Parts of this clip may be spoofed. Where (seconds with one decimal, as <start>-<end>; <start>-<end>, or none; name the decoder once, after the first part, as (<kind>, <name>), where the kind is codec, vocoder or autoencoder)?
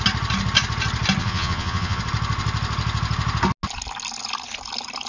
1.2-2.0 (vocoder, Vocos)